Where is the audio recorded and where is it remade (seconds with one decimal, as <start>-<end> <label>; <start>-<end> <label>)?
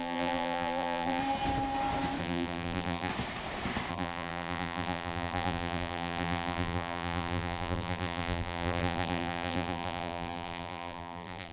0.0-1.2 remade; 1.2-2.2 recorded; 2.2-3.1 remade; 3.1-3.9 recorded; 3.9-11.5 remade